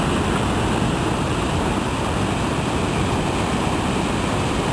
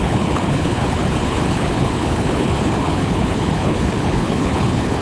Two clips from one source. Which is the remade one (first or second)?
second